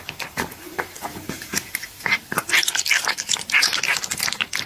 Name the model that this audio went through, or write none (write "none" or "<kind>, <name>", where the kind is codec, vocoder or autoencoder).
vocoder, BigVGAN v2